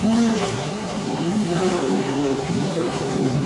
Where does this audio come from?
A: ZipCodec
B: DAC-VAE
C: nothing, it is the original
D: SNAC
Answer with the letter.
D